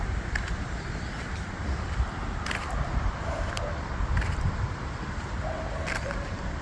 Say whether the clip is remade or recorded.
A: remade